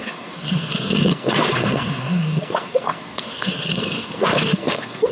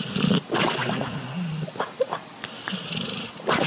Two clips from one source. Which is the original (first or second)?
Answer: second